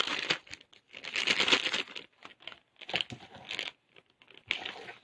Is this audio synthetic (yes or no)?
no